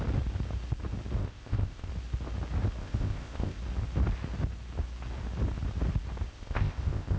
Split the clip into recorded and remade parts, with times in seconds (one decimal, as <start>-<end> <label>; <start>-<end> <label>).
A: 0.0-1.2 recorded; 1.2-1.9 remade; 1.9-2.8 recorded; 2.8-3.6 remade; 3.6-6.3 recorded; 6.3-7.2 remade